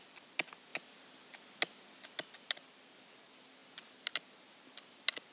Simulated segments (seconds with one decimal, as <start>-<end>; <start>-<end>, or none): none